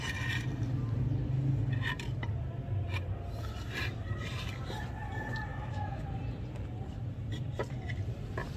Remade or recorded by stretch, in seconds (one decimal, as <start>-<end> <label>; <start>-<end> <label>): 0.0-5.5 recorded; 5.5-6.0 remade; 6.0-8.6 recorded